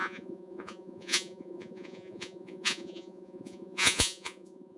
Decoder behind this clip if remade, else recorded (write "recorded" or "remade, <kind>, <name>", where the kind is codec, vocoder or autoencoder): remade, vocoder, Vocos